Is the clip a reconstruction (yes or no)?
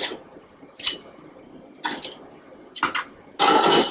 no